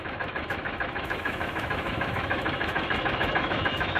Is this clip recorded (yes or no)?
no